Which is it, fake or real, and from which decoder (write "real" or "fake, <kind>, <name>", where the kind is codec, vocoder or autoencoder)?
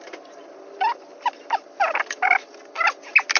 real